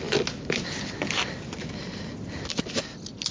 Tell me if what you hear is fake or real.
real